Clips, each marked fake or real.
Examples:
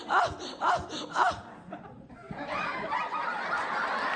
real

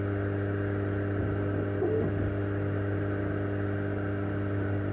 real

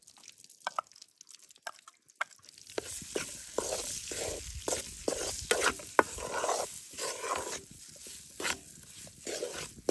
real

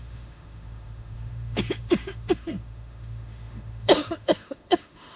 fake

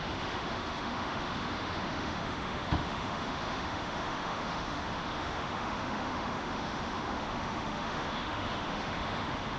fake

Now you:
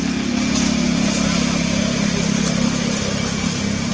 real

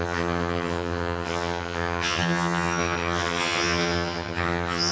fake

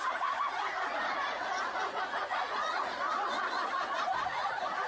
fake